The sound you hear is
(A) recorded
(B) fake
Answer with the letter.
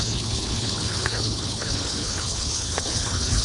B